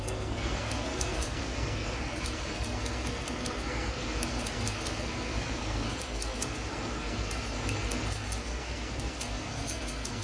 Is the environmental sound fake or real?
fake